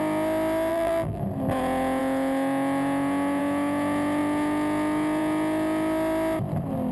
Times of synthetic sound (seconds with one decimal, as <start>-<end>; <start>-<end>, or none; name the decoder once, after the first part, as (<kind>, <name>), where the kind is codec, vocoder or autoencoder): 0.7-1.2 (vocoder, BigVGAN v2)